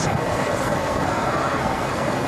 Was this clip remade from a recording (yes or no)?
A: yes